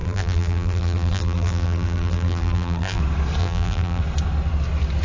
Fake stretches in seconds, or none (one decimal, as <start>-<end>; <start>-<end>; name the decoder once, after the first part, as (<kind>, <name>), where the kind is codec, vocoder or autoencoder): 0.0-3.0 (vocoder, BigVGAN v2); 3.4-4.0